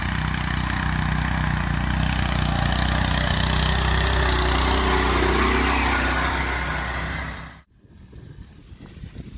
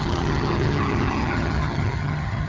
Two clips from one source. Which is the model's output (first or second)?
second